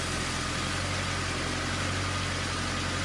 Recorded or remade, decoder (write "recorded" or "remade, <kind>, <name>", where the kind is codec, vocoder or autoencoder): recorded